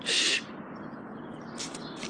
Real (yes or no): yes